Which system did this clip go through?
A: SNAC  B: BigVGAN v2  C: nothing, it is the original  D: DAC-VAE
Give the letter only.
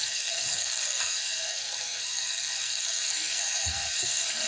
A